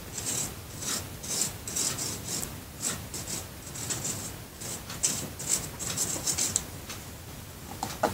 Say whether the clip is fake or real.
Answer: real